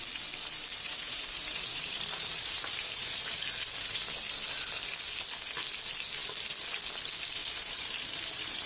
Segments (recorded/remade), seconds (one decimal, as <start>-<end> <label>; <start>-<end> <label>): 0.0-0.7 recorded; 0.7-3.4 remade; 3.4-7.4 recorded; 7.4-8.7 remade